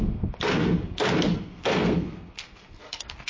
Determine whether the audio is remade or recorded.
remade